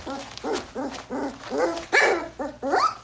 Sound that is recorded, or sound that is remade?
recorded